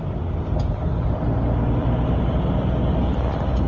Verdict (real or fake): real